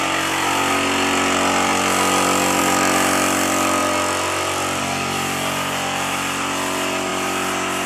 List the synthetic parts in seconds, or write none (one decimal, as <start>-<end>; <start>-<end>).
none